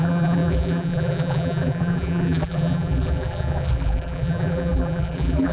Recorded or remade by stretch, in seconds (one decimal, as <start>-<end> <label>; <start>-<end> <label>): 0.0-5.5 remade